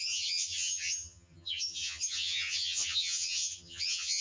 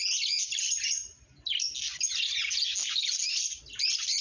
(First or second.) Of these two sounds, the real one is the second